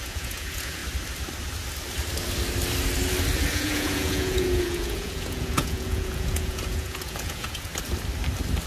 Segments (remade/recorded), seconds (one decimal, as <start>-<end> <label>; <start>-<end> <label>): 0.0-0.8 remade; 0.8-3.5 recorded; 3.5-7.7 remade; 7.7-8.7 recorded